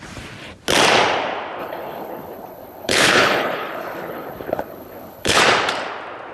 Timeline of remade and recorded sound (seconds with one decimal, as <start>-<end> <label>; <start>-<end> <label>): 0.0-1.6 recorded; 1.6-5.4 remade; 5.4-6.3 recorded